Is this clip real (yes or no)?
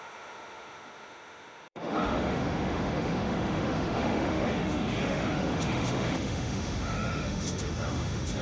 no